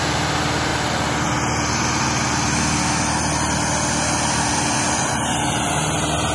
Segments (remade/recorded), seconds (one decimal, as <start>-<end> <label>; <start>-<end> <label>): 0.0-6.3 recorded